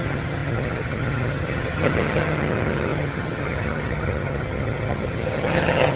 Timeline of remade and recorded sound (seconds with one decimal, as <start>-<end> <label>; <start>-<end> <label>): 0.0-6.0 remade